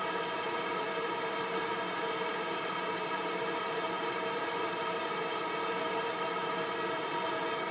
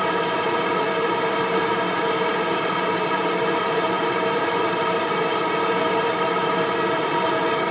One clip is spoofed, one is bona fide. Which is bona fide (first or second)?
first